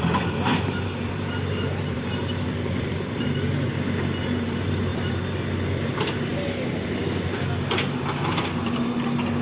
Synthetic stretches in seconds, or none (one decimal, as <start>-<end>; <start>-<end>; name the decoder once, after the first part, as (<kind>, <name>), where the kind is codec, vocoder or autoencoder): 0.5-3.2 (vocoder, BigVGAN v2); 4.9-5.5